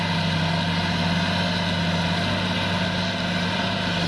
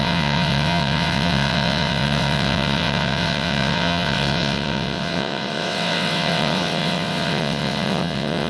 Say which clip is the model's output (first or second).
second